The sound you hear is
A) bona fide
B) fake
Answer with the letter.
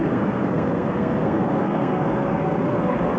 B